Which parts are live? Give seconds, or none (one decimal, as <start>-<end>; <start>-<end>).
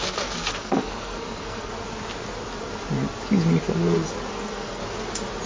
1.7-4.3; 4.8-5.5